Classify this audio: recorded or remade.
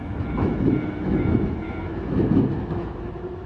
remade